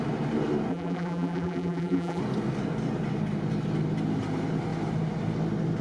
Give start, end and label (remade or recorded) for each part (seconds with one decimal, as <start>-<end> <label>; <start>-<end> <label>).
0.0-0.7 recorded; 0.7-2.2 remade; 2.2-5.8 recorded